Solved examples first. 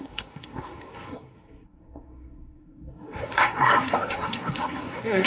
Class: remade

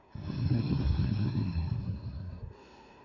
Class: remade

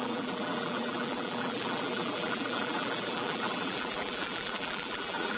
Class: remade